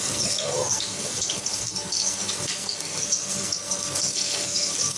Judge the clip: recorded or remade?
remade